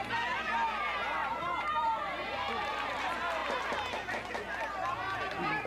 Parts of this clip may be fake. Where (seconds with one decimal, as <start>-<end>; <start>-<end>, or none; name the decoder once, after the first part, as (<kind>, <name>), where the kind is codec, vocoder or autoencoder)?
1.2-2.7 (vocoder, BigVGAN v2)